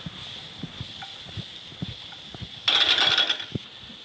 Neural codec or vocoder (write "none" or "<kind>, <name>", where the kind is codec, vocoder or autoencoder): none